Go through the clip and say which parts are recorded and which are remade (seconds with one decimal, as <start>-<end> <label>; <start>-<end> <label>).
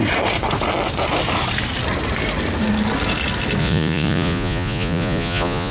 0.0-3.6 recorded; 3.6-5.7 remade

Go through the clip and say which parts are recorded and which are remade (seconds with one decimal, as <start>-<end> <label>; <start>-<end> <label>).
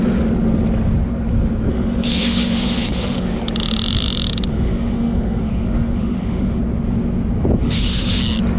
0.0-1.7 recorded; 1.7-3.4 remade; 3.4-4.5 recorded; 4.5-6.6 remade; 6.6-7.6 recorded; 7.6-8.2 remade; 8.2-8.6 recorded